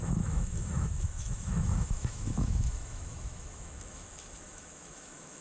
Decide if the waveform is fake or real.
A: fake